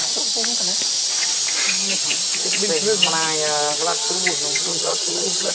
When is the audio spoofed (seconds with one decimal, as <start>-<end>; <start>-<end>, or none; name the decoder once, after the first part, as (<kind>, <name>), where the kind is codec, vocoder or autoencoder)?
4.7-5.5 (vocoder, HiFi-GAN)